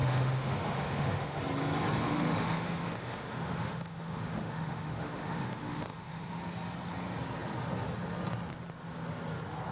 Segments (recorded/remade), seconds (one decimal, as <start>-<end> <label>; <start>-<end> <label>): 0.0-1.4 remade; 1.4-2.0 recorded; 2.0-6.4 remade; 6.4-9.7 recorded